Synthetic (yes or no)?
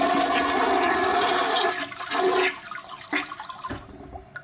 no